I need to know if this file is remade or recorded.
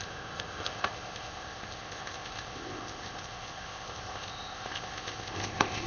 remade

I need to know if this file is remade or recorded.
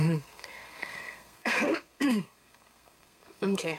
remade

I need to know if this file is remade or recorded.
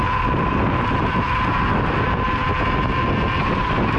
recorded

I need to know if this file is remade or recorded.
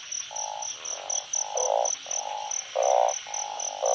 recorded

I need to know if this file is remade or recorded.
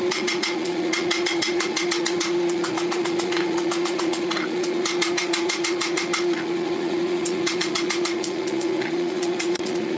remade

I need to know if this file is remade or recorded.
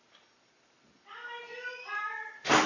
recorded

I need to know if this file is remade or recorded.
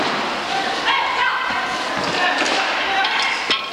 recorded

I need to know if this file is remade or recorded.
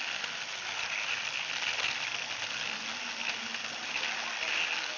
recorded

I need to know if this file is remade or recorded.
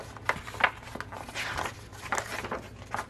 recorded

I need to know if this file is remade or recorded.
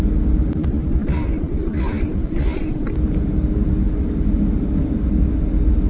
recorded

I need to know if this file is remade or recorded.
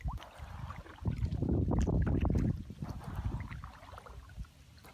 recorded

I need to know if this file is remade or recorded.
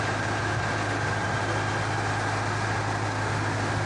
recorded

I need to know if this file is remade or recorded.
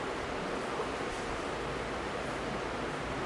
recorded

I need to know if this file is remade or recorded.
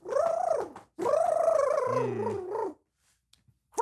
recorded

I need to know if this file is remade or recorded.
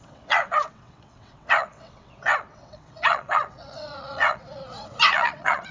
remade